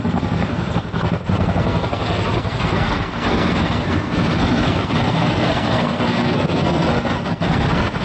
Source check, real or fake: fake